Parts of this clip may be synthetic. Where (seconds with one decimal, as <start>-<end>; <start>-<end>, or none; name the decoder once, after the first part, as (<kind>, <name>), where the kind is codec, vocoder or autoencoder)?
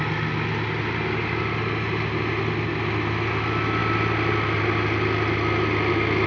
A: none